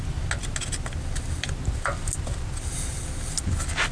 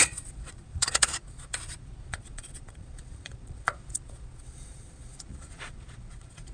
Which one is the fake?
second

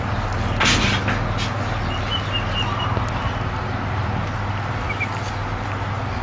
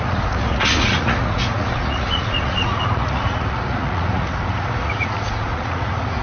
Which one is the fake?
second